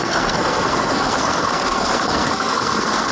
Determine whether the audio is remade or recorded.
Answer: remade